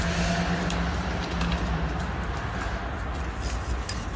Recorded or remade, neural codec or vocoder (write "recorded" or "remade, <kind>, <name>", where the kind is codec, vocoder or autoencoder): recorded